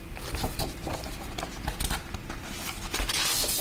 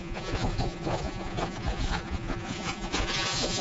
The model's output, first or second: second